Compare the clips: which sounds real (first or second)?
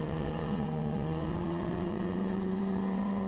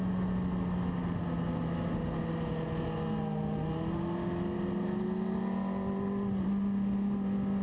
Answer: second